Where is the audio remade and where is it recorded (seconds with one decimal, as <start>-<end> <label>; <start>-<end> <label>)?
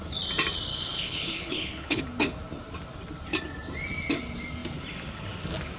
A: 0.0-0.7 recorded; 0.7-2.0 remade; 2.0-5.8 recorded